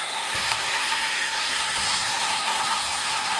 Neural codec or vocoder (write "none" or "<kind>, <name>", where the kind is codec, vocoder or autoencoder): codec, SNAC